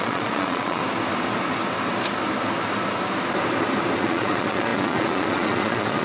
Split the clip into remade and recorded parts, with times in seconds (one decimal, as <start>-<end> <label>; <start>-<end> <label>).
0.0-0.8 remade; 0.8-4.0 recorded; 4.0-6.0 remade